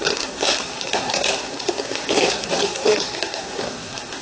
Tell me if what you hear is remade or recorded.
remade